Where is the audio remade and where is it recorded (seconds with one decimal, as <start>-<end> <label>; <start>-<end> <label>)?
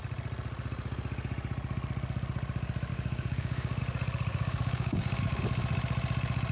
0.0-2.9 recorded; 2.9-3.8 remade; 3.8-4.3 recorded; 4.3-5.4 remade; 5.4-6.5 recorded